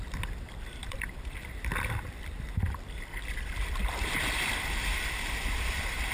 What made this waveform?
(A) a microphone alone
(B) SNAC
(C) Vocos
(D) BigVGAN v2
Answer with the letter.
D